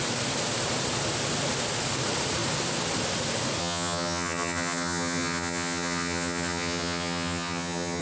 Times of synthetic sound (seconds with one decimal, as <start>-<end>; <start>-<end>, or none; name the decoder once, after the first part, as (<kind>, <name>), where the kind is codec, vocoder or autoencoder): 3.6-8.0 (vocoder, HiFi-GAN)